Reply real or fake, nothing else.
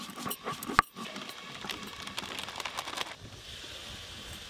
real